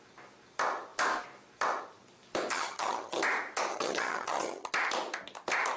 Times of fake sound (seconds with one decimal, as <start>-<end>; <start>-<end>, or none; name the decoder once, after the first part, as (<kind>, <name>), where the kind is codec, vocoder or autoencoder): 2.5-3.2 (vocoder, HiFi-GAN); 3.7-4.7